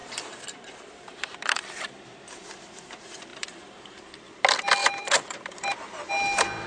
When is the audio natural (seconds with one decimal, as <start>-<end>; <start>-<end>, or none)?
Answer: 1.9-3.3; 4.0-4.8; 5.7-6.7